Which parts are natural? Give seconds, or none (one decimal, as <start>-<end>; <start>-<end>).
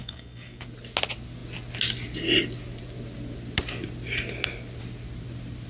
0.6-5.7